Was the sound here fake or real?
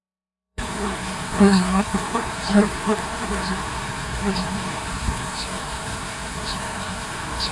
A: fake